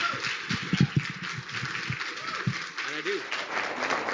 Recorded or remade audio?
recorded